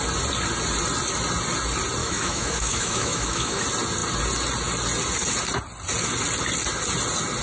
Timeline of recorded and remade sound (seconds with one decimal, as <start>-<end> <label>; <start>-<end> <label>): 0.0-2.0 recorded; 2.0-3.6 remade; 3.6-7.4 recorded